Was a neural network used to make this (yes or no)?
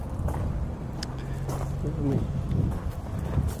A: no